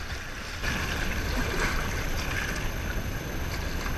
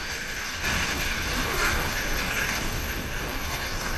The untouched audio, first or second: first